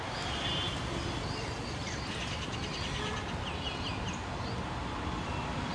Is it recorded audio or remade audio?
recorded